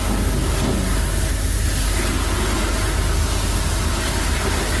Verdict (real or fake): real